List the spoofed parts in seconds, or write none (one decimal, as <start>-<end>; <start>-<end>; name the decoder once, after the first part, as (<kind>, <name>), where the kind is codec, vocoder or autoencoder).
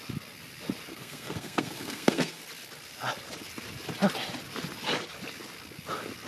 0.9-2.4 (codec, SNAC)